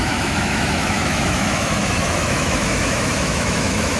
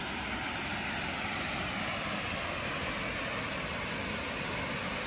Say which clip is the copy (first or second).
first